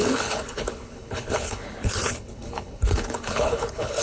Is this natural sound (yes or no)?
no